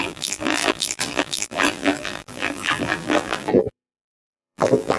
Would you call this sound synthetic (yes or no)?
yes